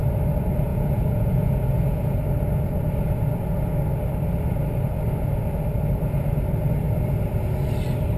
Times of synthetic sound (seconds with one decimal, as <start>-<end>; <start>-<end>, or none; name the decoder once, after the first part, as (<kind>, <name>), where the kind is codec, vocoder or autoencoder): 0.7-2.2 (vocoder, Vocos)

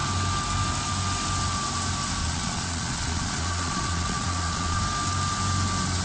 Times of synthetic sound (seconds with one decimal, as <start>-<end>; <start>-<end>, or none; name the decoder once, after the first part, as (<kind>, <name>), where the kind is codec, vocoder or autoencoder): 2.2-4.8 (vocoder, Vocos)